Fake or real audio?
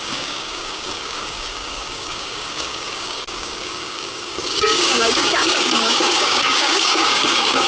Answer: fake